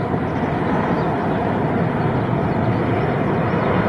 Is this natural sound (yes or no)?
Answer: yes